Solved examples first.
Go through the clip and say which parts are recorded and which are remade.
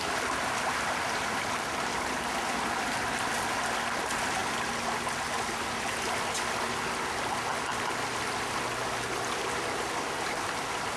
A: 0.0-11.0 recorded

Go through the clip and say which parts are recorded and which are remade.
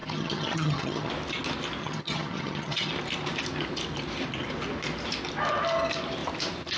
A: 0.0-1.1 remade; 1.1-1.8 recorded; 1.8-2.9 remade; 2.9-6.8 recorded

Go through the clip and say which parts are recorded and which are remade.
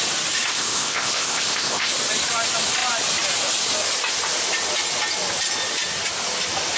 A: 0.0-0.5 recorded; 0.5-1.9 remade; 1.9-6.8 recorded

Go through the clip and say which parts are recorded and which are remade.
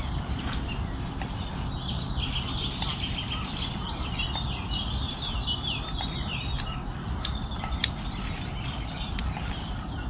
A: 0.0-10.1 recorded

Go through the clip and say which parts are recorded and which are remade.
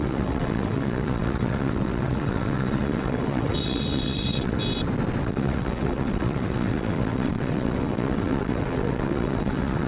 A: 0.0-4.6 remade; 4.6-5.2 recorded; 5.2-9.9 remade